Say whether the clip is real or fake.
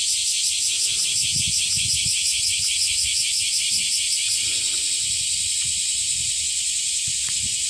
fake